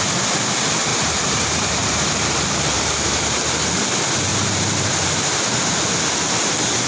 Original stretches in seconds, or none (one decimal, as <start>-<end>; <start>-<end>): 0.0-0.9; 3.5-4.3; 5.6-6.9